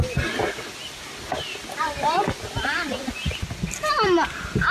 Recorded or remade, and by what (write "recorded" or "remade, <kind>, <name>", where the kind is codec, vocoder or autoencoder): recorded